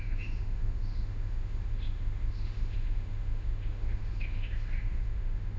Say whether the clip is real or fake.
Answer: fake